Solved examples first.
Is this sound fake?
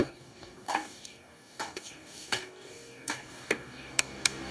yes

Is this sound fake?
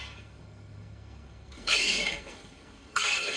yes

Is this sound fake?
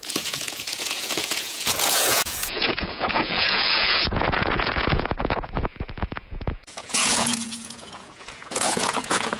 yes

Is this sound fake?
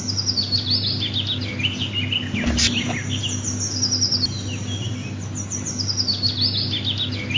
no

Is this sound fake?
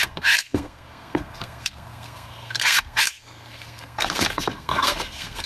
yes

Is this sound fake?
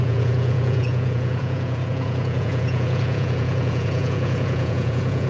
yes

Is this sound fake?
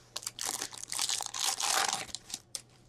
yes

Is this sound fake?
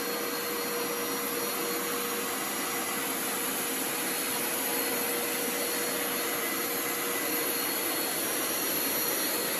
no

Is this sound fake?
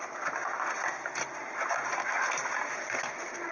no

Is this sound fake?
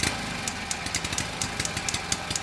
no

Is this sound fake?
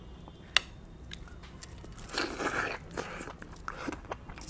no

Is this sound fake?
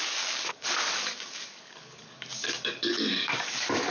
yes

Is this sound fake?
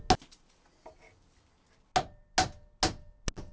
no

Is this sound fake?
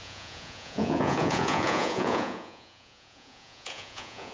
yes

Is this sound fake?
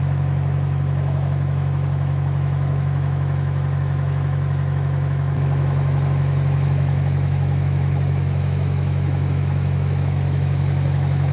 yes